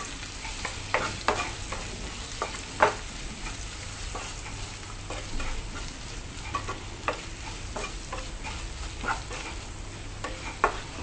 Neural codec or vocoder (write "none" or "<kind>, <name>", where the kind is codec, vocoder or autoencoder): none